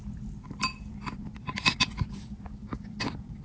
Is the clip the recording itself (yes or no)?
yes